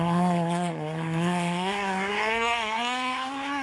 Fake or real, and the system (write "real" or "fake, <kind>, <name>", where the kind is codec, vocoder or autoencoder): fake, codec, SNAC